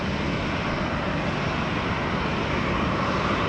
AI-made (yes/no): no